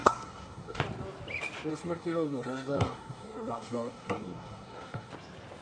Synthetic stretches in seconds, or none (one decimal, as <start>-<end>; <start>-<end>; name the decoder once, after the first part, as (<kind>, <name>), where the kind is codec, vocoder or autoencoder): 0.0-0.8 (codec, SNAC); 1.7-5.1